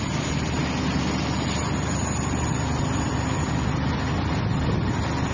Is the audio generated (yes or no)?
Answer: no